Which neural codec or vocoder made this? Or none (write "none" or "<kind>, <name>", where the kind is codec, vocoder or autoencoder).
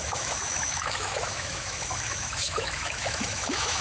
autoencoder, DAC-VAE